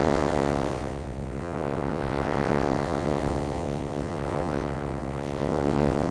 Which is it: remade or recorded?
remade